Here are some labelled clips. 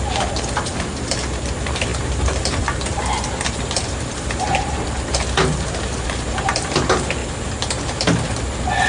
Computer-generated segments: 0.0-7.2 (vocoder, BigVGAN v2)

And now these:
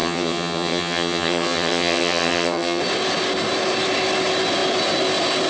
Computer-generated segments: 0.0-2.8 (vocoder, HiFi-GAN)

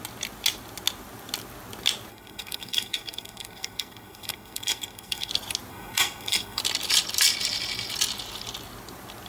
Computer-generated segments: 2.1-5.3 (codec, SNAC); 5.7-6.6